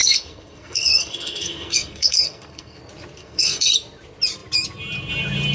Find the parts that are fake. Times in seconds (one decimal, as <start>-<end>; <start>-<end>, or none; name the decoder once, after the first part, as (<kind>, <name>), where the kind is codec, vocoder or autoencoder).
0.0-2.8 (codec, SNAC); 3.2-3.7